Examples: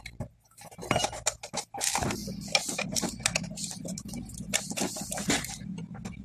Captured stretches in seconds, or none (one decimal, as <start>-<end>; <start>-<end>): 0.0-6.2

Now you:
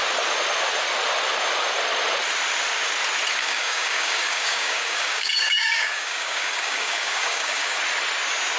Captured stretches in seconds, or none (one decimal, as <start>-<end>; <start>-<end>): 0.0-3.4; 7.8-8.6

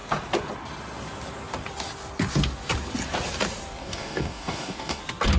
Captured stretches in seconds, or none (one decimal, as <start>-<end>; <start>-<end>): 0.0-3.8; 5.0-5.4

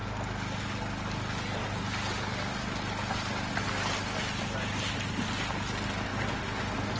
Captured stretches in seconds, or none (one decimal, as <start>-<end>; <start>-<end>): 0.0-7.0